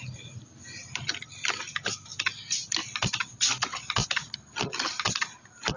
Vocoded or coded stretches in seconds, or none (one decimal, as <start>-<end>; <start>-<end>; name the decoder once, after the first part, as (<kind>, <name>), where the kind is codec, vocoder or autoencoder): none